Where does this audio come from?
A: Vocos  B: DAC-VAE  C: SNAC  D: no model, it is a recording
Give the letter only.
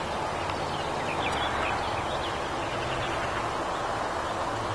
D